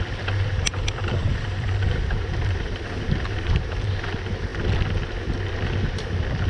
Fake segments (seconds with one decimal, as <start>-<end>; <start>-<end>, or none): 1.2-4.0